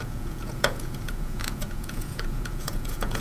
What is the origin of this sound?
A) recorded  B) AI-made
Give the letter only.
B